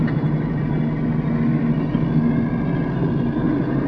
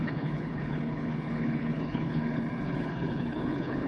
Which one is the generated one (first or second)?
second